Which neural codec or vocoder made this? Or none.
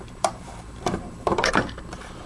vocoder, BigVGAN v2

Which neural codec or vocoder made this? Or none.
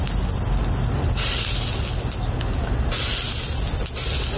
none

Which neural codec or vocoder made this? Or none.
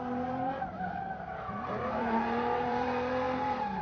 vocoder, BigVGAN v2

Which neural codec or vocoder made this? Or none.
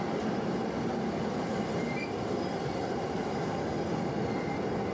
none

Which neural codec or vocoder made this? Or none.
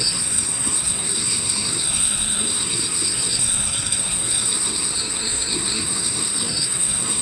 codec, SNAC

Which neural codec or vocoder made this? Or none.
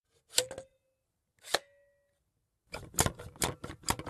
none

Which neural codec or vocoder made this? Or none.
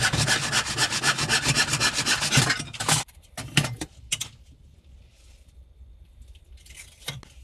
none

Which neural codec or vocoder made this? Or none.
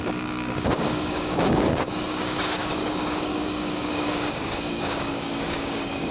codec, DAC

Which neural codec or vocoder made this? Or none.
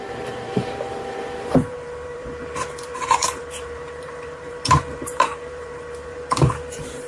vocoder, BigVGAN v2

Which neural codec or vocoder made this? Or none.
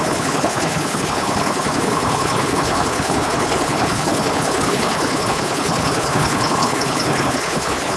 codec, HILCodec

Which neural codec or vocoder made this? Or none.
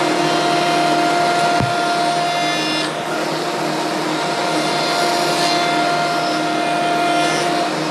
none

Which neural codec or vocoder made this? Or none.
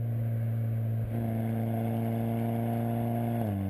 none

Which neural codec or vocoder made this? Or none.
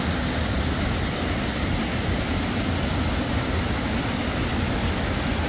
none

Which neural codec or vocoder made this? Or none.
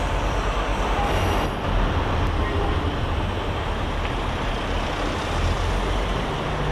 none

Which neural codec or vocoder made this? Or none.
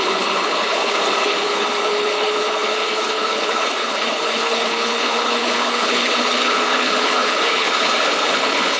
codec, HILCodec